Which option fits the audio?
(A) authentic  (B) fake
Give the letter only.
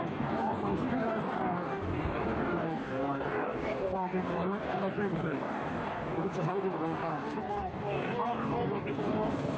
B